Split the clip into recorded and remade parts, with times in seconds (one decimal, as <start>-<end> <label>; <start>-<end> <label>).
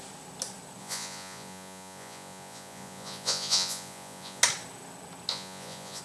0.0-0.8 recorded; 0.8-4.4 remade; 4.4-5.3 recorded; 5.3-6.0 remade